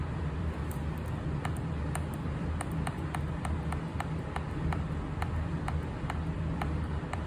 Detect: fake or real fake